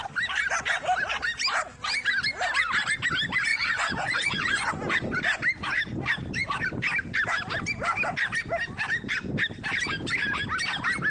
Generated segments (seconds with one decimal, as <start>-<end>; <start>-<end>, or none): 3.5-4.7